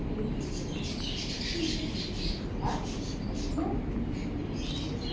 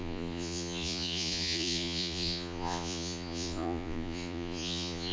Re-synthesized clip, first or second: second